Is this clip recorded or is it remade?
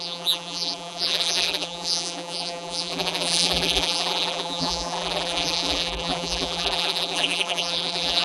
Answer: remade